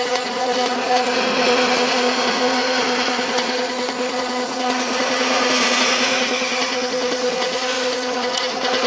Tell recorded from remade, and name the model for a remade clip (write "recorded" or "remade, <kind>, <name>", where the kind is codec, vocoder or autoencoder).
remade, vocoder, Vocos